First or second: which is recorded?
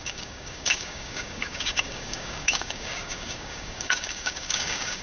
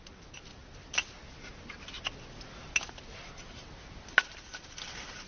second